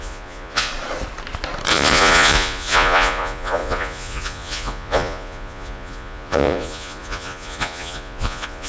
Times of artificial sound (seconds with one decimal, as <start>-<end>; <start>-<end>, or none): 0.0-0.7; 1.7-8.7